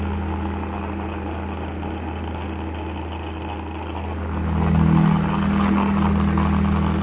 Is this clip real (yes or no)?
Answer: yes